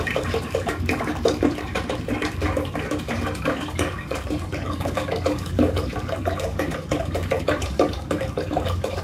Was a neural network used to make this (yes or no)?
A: yes